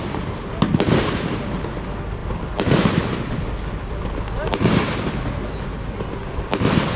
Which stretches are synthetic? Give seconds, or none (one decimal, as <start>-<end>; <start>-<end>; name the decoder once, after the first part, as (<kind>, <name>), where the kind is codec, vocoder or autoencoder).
none